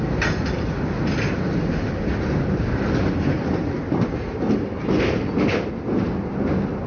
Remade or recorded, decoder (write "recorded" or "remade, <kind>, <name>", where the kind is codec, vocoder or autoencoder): recorded